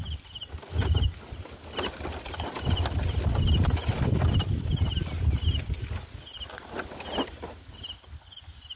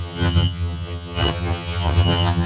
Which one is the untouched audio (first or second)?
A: first